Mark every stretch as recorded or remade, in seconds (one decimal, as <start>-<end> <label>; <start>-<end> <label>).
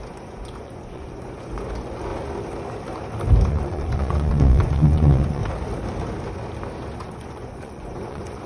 0.0-2.1 remade; 2.1-3.5 recorded; 3.5-5.4 remade; 5.4-7.0 recorded; 7.0-8.5 remade